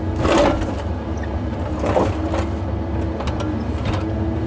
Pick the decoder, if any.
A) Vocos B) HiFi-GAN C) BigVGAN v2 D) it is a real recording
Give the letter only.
D